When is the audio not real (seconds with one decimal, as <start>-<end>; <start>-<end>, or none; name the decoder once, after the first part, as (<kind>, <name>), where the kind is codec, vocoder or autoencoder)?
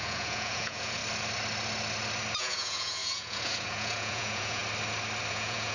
0.0-1.0 (vocoder, Vocos); 2.4-4.6; 5.3-5.7